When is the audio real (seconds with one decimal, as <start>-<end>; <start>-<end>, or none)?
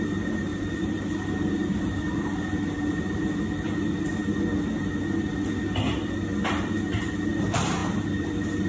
0.0-0.5; 3.4-8.7